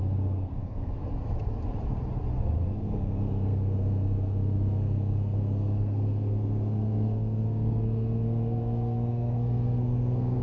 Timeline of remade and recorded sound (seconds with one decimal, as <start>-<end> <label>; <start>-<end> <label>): 0.0-1.0 remade; 1.0-2.7 recorded; 2.7-10.4 remade